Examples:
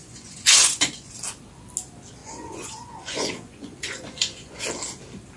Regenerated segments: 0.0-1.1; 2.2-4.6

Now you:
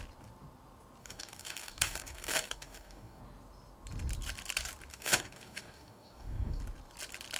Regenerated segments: 1.0-3.2; 4.9-6.6

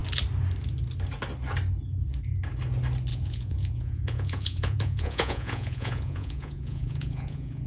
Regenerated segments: 3.1-7.7

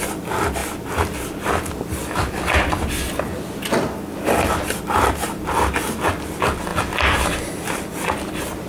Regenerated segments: none

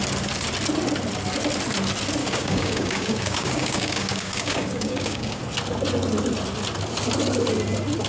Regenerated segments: 2.2-5.4

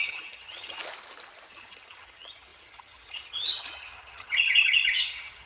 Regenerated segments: 0.0-0.8; 1.5-5.5

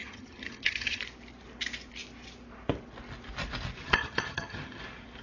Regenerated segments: 0.0-1.0; 3.8-4.8

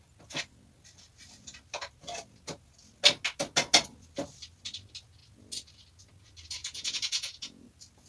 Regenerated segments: 6.6-7.6